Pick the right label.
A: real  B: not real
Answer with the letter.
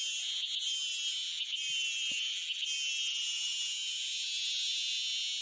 A